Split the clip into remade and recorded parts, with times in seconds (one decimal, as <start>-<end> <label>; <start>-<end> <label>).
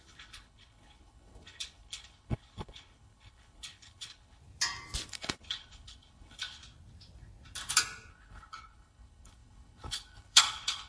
0.0-4.4 remade; 4.4-5.1 recorded; 5.1-6.6 remade; 6.6-8.1 recorded; 8.1-10.9 remade